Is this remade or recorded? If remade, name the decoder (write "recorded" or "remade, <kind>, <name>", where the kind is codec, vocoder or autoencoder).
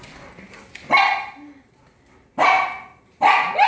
recorded